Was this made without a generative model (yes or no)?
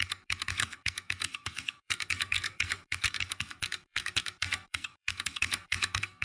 no